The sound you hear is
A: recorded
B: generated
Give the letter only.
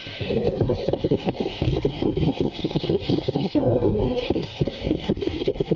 B